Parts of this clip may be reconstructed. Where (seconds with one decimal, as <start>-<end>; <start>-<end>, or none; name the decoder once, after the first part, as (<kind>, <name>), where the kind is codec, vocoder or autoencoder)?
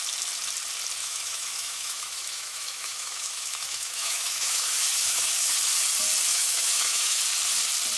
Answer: 1.0-5.5 (autoencoder, DAC-VAE); 6.3-7.2